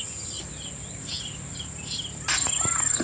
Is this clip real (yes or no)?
yes